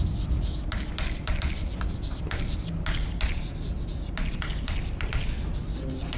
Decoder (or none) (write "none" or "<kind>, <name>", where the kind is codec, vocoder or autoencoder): none